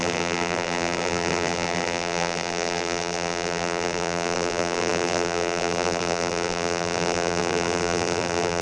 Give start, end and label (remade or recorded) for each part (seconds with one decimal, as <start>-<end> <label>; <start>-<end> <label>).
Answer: 0.0-8.6 remade

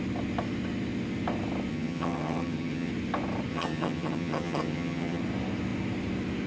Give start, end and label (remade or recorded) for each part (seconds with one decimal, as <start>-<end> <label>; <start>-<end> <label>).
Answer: 0.0-1.7 recorded; 1.7-2.9 remade; 2.9-3.5 recorded; 3.5-5.2 remade; 5.2-6.5 recorded

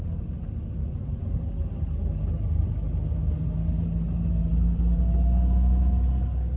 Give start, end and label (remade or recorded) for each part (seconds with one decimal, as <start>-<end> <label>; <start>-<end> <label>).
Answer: 0.0-0.8 recorded; 0.8-1.3 remade; 1.3-4.4 recorded; 4.4-5.0 remade; 5.0-6.6 recorded